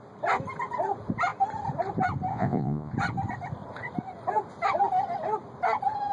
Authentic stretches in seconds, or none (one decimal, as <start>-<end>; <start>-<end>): 0.0-2.3; 2.9-6.1